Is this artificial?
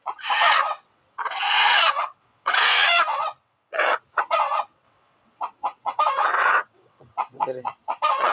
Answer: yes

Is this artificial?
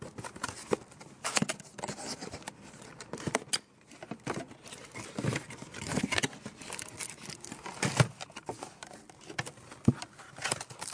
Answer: no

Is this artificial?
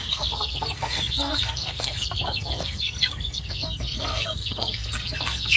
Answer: yes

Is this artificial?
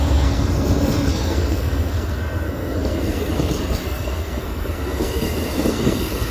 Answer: yes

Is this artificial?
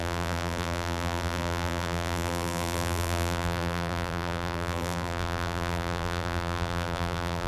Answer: yes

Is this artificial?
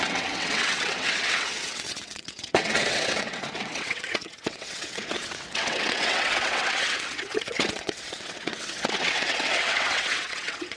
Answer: yes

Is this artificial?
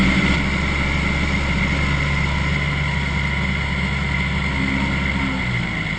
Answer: no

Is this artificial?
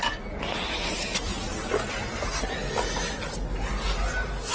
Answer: no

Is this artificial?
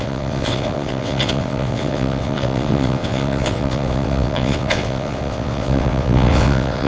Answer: yes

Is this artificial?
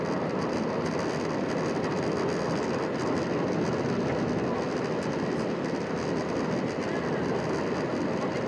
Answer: no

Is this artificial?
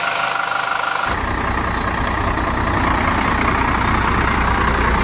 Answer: no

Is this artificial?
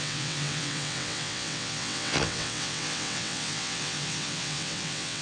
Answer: yes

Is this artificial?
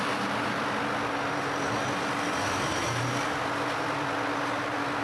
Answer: no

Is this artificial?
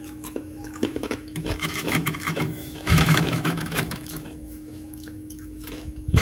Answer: yes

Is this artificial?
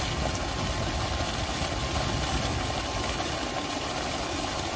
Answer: no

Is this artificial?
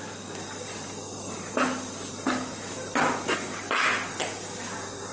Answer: no